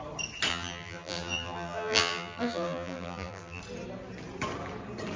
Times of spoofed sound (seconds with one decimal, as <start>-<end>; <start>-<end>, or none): 0.5-3.6